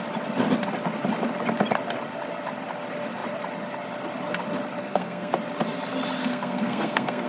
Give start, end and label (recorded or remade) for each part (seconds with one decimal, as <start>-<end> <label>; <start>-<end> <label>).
0.0-4.8 recorded; 4.8-5.3 remade; 5.3-6.2 recorded; 6.2-7.3 remade